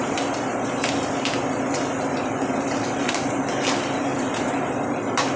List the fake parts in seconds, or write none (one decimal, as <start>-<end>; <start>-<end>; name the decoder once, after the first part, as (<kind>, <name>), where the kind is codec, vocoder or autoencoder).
4.1-5.0 (vocoder, BigVGAN v2)